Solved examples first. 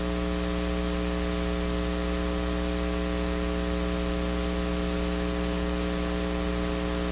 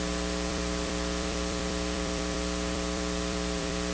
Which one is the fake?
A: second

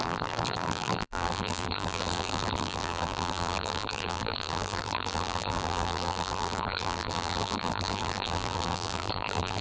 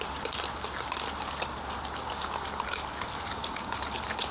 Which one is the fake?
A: first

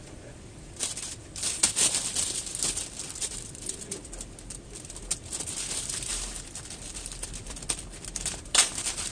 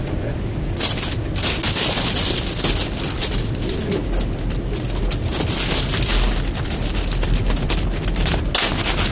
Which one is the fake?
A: first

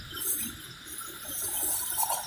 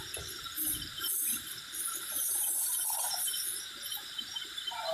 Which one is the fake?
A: second